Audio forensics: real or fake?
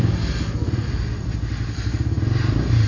real